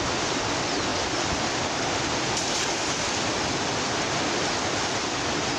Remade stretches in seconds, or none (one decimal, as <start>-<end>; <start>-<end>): none